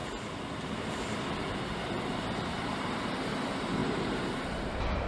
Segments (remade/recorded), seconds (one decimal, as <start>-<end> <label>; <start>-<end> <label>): 0.0-3.8 remade; 3.8-4.6 recorded; 4.6-5.1 remade